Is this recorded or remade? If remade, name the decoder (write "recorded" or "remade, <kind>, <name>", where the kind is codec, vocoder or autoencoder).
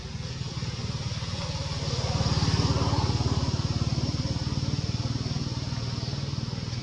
recorded